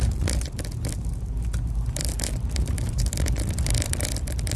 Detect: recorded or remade recorded